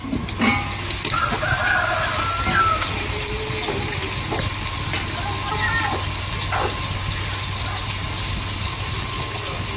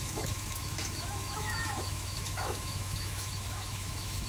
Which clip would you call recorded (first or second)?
first